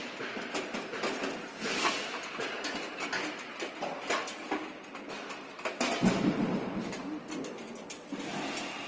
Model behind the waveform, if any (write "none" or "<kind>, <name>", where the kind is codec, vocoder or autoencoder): none